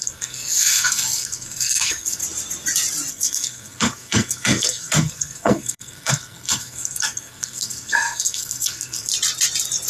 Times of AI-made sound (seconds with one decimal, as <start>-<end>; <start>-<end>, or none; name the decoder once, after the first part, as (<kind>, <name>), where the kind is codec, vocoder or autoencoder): 0.0-2.2 (codec, SNAC); 3.1-9.1